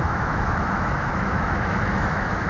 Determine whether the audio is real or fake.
fake